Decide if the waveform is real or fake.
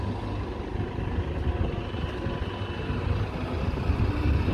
real